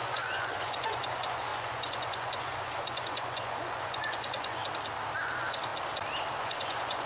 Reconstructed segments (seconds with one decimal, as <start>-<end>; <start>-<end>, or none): 0.0-4.6; 5.2-5.7; 6.4-7.1